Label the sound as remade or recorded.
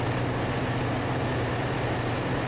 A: recorded